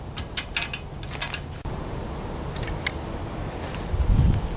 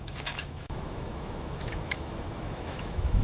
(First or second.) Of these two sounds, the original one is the first